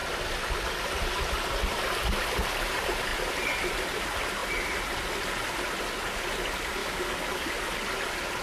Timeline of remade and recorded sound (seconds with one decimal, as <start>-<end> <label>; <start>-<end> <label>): 0.0-6.8 recorded; 6.8-7.5 remade; 7.5-8.4 recorded